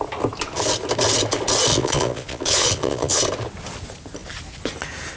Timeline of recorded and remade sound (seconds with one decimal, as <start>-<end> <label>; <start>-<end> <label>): 0.0-1.7 recorded; 1.7-3.2 remade; 3.2-5.2 recorded